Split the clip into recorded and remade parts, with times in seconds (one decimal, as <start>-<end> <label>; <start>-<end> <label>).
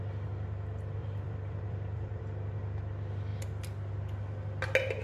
0.0-1.0 recorded; 1.0-2.2 remade; 2.2-5.0 recorded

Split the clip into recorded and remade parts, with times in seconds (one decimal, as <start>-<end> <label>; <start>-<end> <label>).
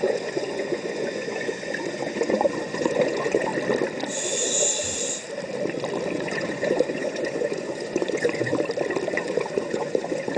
0.0-3.5 remade; 3.5-6.1 recorded; 6.1-8.5 remade; 8.5-9.1 recorded; 9.1-10.4 remade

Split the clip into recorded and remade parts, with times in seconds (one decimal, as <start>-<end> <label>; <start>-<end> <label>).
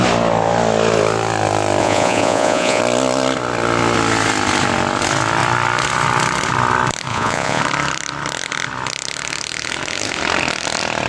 0.0-1.8 recorded; 1.8-2.8 remade; 2.8-7.1 recorded; 7.1-7.6 remade; 7.6-11.1 recorded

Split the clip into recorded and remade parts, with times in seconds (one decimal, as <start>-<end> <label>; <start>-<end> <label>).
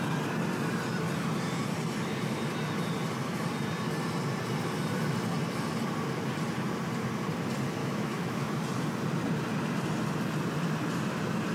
0.0-7.8 recorded; 7.8-8.5 remade; 8.5-11.5 recorded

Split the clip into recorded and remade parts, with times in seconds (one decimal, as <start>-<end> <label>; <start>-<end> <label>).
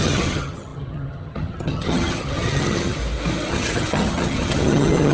0.0-3.0 remade; 3.0-3.5 recorded; 3.5-5.1 remade